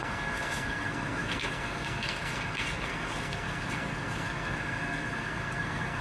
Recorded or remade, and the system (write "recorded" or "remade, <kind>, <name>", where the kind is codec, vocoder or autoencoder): remade, codec, SNAC